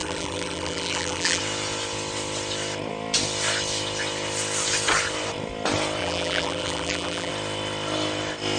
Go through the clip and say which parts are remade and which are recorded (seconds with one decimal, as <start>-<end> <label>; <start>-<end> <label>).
0.0-1.4 remade; 1.4-6.0 recorded; 6.0-7.3 remade; 7.3-8.6 recorded